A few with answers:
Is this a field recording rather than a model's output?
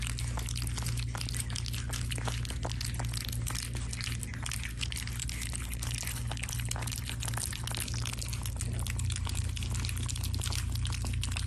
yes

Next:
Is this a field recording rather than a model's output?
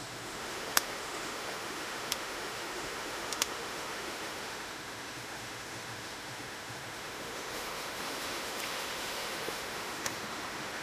no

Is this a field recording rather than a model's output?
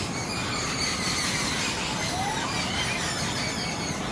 yes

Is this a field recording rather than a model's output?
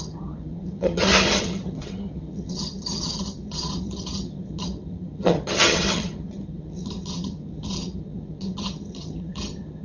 no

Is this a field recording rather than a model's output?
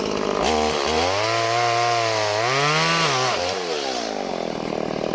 yes